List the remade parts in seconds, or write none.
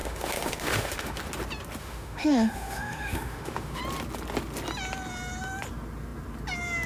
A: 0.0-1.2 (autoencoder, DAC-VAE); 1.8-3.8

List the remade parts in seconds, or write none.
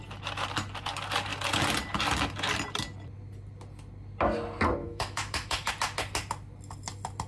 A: 4.8-5.7 (autoencoder, DAC-VAE)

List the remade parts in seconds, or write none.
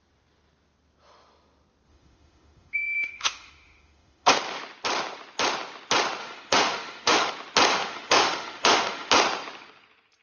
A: 1.9-4.4 (autoencoder, DAC-VAE); 6.2-7.3; 7.7-9.1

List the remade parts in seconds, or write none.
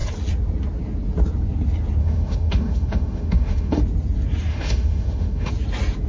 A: 2.0-3.8 (autoencoder, DAC-VAE); 4.5-5.5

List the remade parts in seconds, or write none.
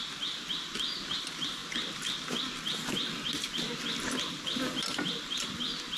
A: none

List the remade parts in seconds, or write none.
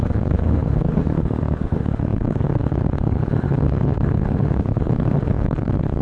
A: 0.0-6.0 (autoencoder, DAC-VAE)